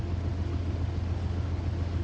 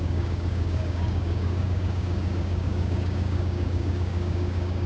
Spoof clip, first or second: second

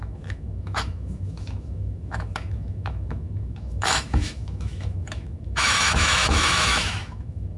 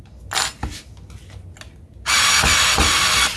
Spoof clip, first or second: first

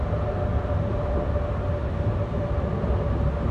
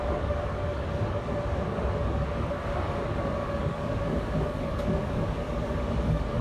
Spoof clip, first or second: second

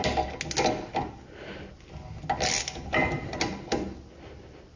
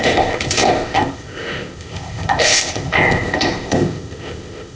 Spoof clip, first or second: second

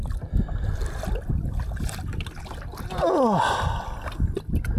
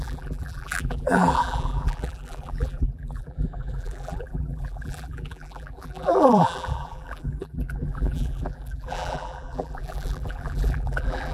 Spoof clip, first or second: second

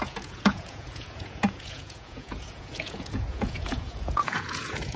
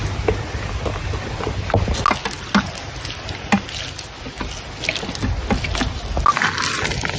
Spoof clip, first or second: first